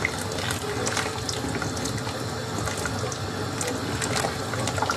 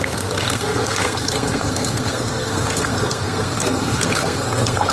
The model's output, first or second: second